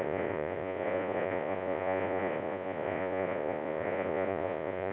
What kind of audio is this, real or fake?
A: fake